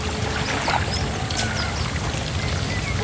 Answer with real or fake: real